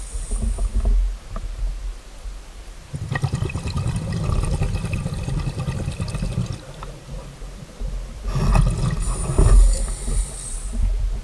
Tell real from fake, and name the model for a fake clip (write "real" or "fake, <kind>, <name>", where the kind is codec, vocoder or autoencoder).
real